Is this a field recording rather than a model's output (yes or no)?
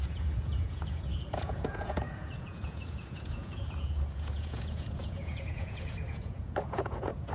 no